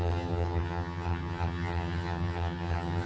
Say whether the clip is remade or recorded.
remade